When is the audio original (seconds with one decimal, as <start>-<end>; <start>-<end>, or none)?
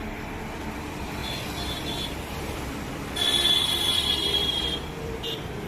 1.2-2.0